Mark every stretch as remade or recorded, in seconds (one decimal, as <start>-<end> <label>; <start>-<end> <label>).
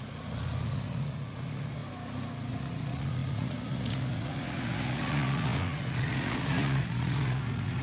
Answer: 0.0-1.8 remade; 1.8-2.5 recorded; 2.5-7.8 remade